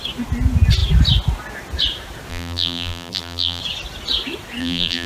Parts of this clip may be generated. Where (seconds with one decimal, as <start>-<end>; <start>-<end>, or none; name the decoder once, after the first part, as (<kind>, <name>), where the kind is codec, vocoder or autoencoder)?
2.3-3.6 (vocoder, BigVGAN v2); 4.6-5.1

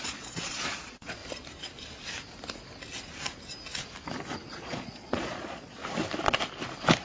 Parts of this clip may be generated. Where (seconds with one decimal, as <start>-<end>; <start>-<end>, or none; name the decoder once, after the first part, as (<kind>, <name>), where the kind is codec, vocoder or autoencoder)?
0.0-1.2 (vocoder, Vocos); 4.5-5.8

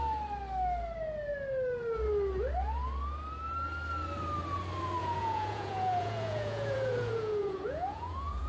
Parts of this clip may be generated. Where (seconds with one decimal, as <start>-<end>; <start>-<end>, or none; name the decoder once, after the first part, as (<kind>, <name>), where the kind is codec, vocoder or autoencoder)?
5.0-8.5 (vocoder, Vocos)

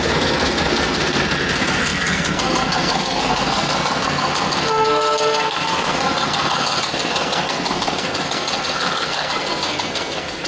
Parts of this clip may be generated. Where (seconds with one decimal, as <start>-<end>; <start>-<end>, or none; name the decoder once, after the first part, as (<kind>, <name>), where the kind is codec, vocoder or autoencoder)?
0.0-10.5 (codec, SNAC)

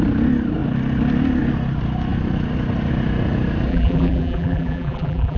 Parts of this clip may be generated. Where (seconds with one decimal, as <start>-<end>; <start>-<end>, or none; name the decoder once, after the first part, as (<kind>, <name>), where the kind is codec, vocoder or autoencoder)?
3.7-5.4 (vocoder, BigVGAN v2)

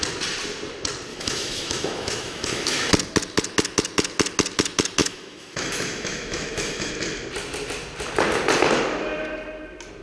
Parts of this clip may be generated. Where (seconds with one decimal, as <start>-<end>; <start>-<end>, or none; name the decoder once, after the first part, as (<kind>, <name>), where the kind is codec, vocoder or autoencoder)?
1.1-2.9 (autoencoder, DAC-VAE); 5.0-6.9

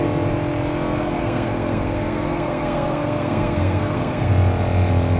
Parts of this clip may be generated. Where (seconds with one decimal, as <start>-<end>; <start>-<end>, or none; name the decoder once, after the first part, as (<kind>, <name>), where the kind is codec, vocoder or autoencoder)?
1.2-4.3 (codec, SNAC)